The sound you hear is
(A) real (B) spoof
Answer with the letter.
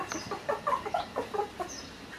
A